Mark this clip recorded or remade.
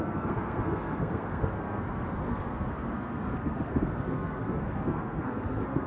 remade